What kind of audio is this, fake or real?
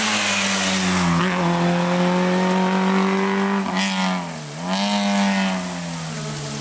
real